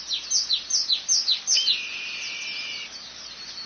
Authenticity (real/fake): real